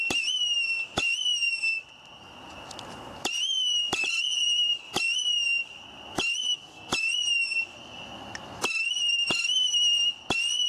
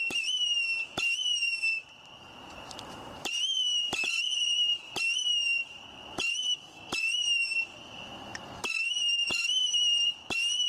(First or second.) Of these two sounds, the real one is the first